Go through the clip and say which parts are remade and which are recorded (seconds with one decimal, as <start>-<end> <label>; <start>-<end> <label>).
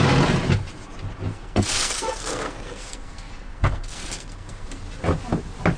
0.0-1.3 recorded; 1.3-4.8 remade; 4.8-5.8 recorded